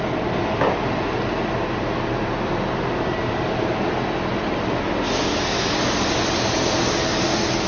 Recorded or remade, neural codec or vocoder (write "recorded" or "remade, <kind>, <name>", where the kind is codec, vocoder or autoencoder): recorded